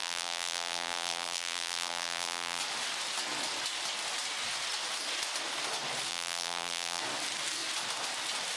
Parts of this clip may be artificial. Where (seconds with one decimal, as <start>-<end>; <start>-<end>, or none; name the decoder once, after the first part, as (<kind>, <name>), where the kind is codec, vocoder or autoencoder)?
0.0-2.6 (vocoder, BigVGAN v2); 6.1-7.0

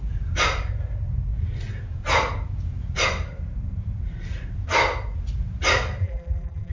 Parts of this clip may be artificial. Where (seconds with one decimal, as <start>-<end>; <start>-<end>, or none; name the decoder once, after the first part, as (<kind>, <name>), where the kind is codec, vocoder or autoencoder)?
6.0-6.7 (vocoder, BigVGAN v2)

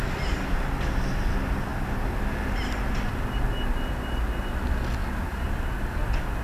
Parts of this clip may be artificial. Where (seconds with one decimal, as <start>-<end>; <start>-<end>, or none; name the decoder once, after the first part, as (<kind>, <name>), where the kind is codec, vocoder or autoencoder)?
5.0-5.5 (vocoder, BigVGAN v2)